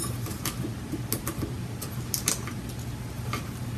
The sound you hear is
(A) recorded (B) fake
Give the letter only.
A